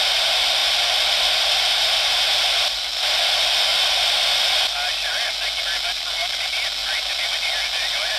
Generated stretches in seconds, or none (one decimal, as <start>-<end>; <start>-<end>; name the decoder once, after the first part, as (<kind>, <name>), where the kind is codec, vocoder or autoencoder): none